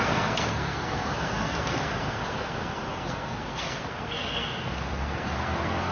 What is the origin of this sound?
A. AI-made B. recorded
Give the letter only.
A